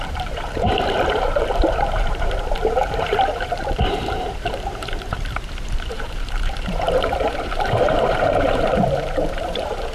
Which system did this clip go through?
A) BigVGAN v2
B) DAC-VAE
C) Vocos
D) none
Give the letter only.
A